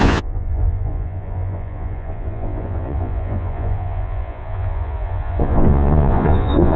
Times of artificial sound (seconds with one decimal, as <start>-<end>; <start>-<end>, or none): 0.0-6.8